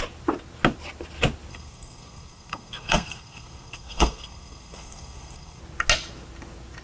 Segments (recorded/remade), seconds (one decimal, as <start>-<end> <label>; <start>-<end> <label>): 0.0-1.5 recorded; 1.5-5.6 remade; 5.6-6.8 recorded